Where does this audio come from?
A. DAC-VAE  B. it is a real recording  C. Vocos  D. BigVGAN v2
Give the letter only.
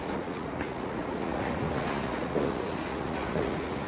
C